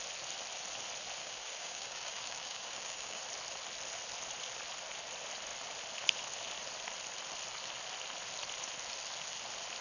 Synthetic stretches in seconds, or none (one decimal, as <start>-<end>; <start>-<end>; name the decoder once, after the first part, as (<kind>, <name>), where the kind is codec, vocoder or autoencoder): 1.2-3.2 (codec, DAC)